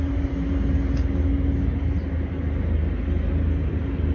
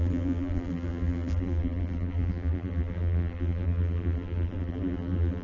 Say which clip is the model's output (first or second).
second